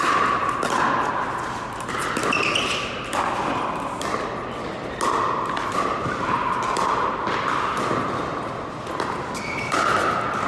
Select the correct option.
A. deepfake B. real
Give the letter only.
B